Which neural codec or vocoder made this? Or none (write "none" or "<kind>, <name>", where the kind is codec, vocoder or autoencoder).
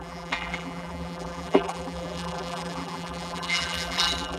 vocoder, BigVGAN v2